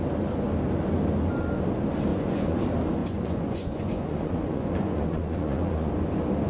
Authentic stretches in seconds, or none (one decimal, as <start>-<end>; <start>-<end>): 0.0-2.1; 2.6-3.0; 5.9-6.5